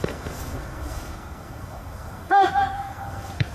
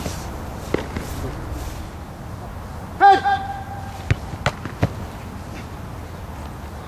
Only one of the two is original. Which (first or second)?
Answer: second